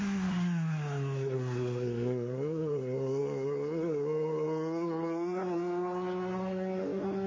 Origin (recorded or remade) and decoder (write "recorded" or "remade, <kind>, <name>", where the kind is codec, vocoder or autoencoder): remade, codec, SNAC